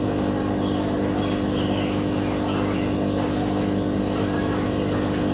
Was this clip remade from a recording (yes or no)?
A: no